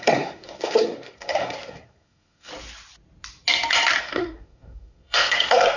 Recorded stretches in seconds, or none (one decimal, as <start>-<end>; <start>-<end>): 2.5-4.0